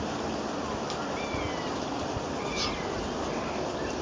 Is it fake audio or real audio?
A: real